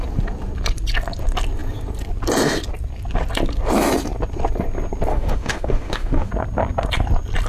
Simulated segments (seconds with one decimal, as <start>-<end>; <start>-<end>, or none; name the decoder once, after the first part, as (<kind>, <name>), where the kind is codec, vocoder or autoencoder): 5.1-6.3 (autoencoder, DAC-VAE)